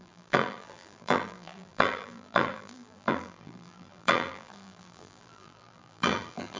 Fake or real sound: fake